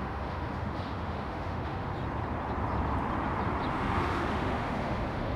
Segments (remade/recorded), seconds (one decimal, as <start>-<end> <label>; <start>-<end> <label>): 0.0-1.9 remade; 1.9-3.7 recorded; 3.7-5.4 remade